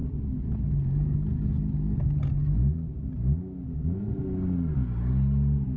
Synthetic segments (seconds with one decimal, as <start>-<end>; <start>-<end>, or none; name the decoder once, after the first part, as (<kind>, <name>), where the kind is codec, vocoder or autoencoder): none